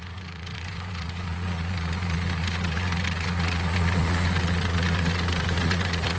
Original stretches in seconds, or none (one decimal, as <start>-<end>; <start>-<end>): none